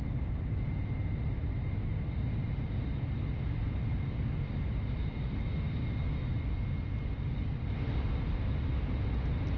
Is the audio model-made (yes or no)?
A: no